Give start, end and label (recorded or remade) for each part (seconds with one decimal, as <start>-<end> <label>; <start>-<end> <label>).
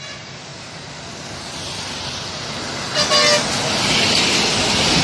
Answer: 0.0-5.0 recorded